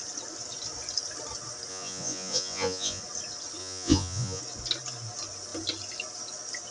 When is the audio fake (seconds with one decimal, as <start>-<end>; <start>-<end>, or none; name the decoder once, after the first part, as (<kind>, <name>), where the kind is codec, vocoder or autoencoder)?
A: 1.7-3.0 (vocoder, Vocos); 3.6-4.4